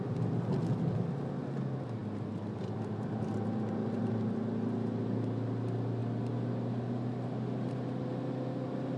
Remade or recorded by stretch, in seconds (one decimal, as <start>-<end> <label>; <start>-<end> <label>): 0.0-9.0 recorded